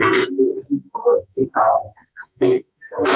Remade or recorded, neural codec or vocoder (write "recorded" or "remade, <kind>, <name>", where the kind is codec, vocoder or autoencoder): remade, codec, SNAC